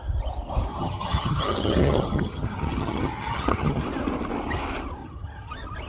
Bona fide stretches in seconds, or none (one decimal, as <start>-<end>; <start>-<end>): 0.0-0.7; 3.8-5.0; 5.5-5.9